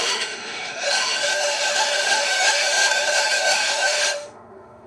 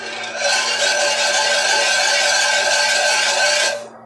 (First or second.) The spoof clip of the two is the first